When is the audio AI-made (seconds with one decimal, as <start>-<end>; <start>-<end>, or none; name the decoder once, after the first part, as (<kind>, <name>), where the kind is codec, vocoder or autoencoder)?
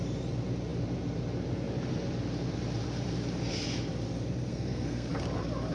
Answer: 4.5-5.1 (codec, SNAC)